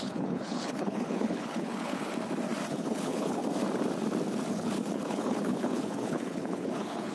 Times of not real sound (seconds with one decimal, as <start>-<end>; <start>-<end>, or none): 0.0-2.1; 2.7-3.4; 4.5-7.1

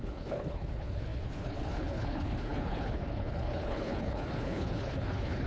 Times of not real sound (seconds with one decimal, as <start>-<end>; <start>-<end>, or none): 0.0-5.5

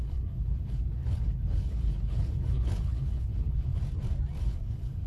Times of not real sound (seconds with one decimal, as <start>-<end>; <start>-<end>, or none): 0.0-3.8; 4.4-5.1

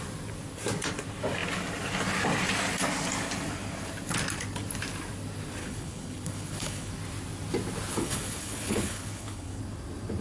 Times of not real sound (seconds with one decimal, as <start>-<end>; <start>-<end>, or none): 5.6-6.9; 7.9-9.6

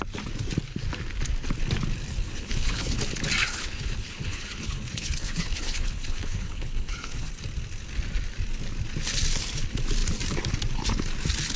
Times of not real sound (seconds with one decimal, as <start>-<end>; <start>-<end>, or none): 2.1-3.0; 3.4-7.3